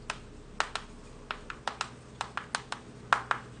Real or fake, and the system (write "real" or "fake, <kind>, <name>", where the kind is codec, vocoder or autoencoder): real